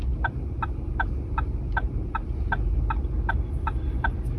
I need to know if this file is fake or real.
real